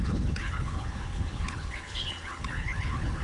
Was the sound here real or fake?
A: fake